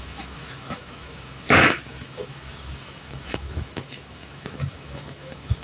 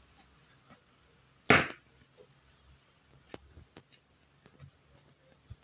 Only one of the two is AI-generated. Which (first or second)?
first